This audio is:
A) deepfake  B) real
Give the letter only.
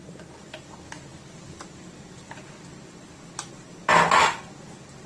B